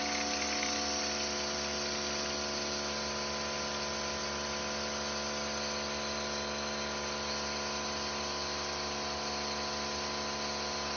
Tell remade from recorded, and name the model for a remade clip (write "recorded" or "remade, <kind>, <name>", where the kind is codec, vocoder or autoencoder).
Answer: recorded